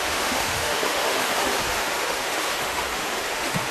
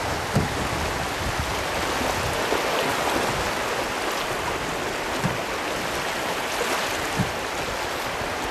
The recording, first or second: second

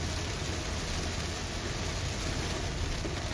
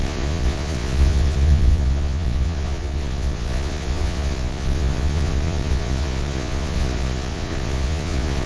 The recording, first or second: first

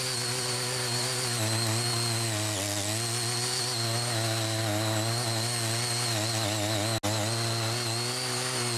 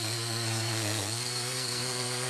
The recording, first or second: first